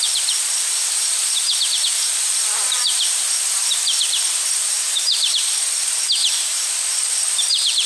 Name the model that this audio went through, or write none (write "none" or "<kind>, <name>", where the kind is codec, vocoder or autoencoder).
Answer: vocoder, BigVGAN v2